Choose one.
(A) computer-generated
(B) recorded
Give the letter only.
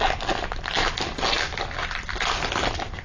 B